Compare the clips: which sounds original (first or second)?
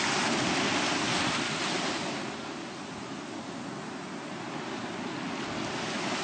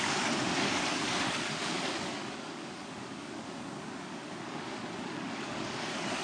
first